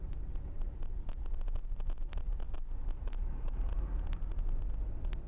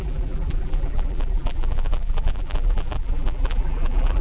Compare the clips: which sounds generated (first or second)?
second